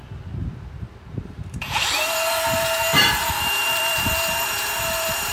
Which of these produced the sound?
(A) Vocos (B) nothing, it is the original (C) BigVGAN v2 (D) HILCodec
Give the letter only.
C